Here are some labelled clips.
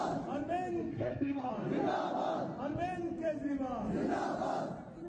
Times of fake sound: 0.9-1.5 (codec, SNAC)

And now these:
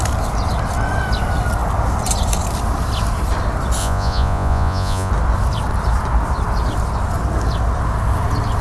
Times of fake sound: 3.8-5.1 (vocoder, Vocos)

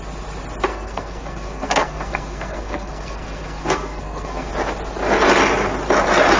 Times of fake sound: 0.7-4.5 (codec, SNAC)